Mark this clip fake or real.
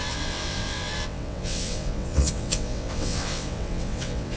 fake